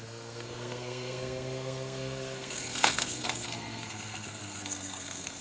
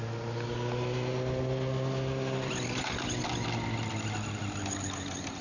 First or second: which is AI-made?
first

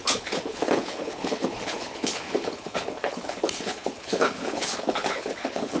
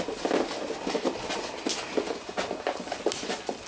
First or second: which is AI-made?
first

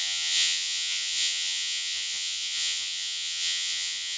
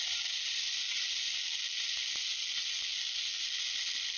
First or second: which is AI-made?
first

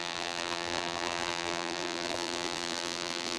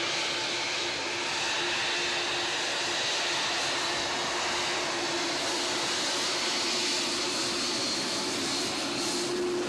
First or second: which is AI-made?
first